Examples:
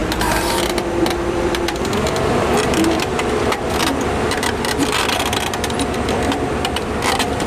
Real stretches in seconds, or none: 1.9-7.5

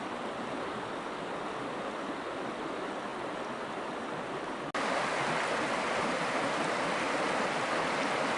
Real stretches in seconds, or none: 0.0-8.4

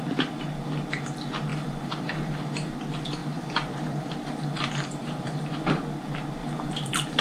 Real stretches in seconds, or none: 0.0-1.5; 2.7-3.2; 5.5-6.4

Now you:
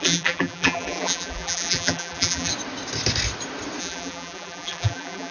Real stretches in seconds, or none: 2.5-3.8